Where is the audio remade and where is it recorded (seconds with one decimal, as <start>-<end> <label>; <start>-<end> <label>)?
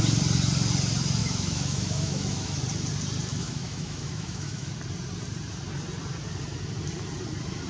0.0-1.2 recorded; 1.2-2.6 remade; 2.6-3.3 recorded; 3.3-4.7 remade; 4.7-7.7 recorded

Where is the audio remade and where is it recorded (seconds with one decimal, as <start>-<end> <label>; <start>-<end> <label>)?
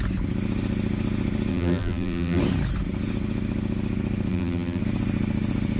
0.0-1.5 recorded; 1.5-2.4 remade; 2.4-4.3 recorded; 4.3-4.8 remade; 4.8-5.8 recorded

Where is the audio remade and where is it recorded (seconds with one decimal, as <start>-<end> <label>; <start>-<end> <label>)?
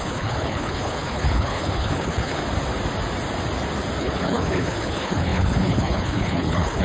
0.0-2.4 remade; 2.4-4.0 recorded; 4.0-6.8 remade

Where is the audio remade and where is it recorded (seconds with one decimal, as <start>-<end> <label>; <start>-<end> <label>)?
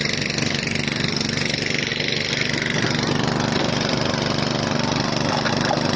0.0-6.0 recorded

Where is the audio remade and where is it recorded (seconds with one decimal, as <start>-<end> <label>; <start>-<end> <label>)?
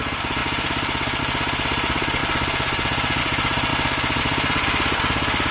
0.0-2.2 remade; 2.2-3.2 recorded; 3.2-3.7 remade; 3.7-4.2 recorded; 4.2-5.5 remade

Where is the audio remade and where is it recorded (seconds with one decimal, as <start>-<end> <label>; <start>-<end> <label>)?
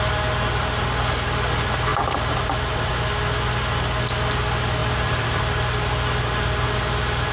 0.0-1.9 recorded; 1.9-2.9 remade; 2.9-4.8 recorded; 4.8-5.4 remade; 5.4-7.3 recorded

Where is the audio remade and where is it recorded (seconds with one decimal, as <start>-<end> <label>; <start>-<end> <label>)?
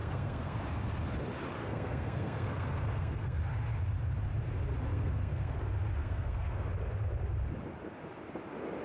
0.0-0.6 remade; 0.6-1.6 recorded; 1.6-3.4 remade; 3.4-4.9 recorded; 4.9-5.6 remade; 5.6-6.0 recorded; 6.0-6.7 remade; 6.7-8.8 recorded